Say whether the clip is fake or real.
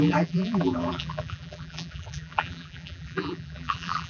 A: fake